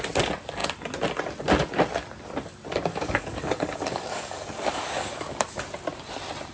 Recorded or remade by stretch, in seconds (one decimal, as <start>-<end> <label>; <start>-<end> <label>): 0.0-2.9 recorded; 2.9-5.6 remade; 5.6-6.5 recorded